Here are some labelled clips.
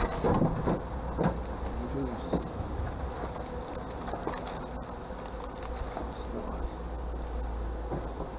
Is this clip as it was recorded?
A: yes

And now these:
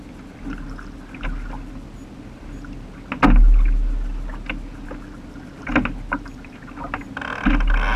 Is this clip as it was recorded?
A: yes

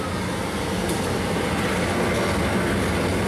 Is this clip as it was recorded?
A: yes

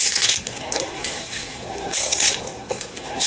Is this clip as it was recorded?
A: no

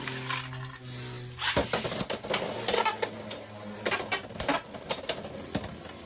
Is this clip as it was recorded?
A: yes